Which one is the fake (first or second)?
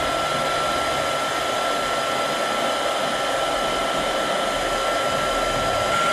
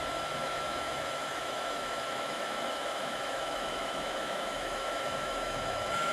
second